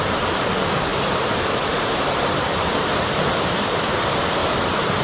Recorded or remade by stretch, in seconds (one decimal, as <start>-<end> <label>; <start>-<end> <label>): 0.0-0.9 recorded; 0.9-3.9 remade; 3.9-4.4 recorded; 4.4-5.0 remade